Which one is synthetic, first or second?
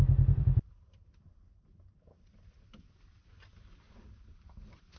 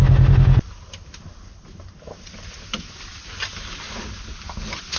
first